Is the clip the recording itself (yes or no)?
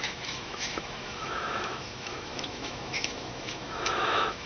no